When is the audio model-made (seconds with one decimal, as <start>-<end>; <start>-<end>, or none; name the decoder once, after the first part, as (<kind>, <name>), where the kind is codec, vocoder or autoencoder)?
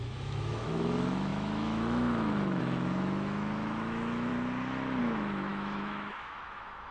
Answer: 0.0-4.3 (autoencoder, DAC-VAE); 5.0-6.9